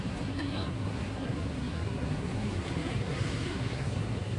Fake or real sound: fake